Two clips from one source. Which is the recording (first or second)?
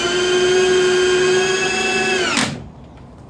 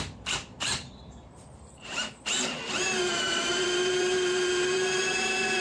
first